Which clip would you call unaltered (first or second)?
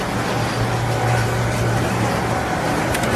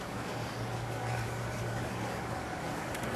first